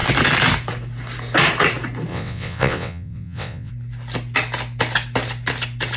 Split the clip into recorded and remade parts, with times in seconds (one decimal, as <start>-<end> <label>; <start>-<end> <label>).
0.0-2.1 recorded; 2.1-3.7 remade; 3.7-6.0 recorded